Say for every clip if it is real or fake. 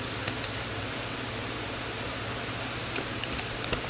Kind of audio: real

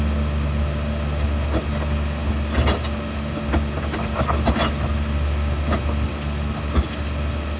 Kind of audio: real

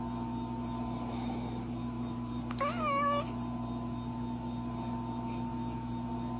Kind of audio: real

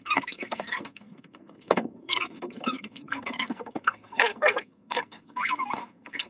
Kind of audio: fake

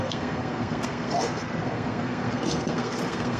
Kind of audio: fake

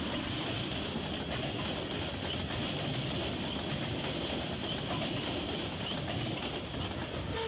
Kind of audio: real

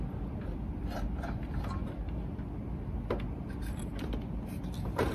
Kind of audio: real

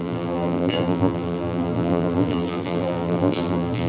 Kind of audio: fake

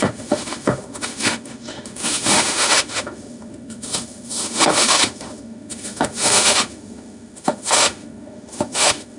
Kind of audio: fake